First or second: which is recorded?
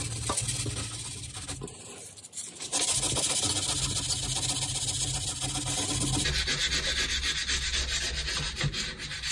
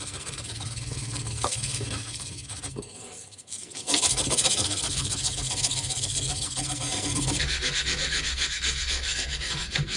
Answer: first